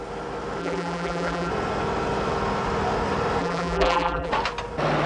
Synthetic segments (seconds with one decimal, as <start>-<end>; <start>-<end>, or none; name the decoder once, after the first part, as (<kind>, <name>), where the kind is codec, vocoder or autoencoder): 0.6-1.5 (vocoder, BigVGAN v2); 3.4-4.3